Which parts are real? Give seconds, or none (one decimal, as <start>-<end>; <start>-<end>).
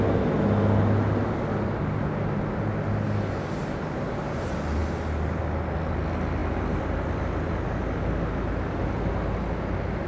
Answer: 0.0-6.4; 7.2-10.1